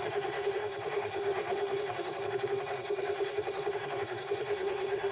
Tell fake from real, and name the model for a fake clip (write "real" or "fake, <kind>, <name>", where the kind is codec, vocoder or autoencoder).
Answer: fake, codec, SNAC